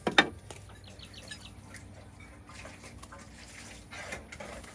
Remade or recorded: recorded